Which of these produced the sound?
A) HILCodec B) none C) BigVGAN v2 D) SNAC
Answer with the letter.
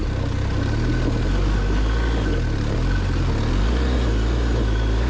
B